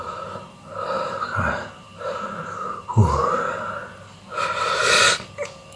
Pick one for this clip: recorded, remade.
recorded